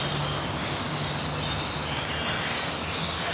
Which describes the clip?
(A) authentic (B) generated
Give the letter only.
A